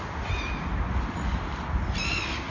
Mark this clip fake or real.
real